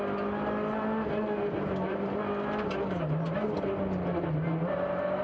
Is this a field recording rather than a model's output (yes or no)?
yes